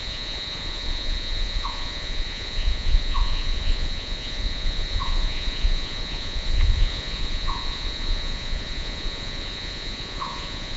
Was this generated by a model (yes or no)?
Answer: yes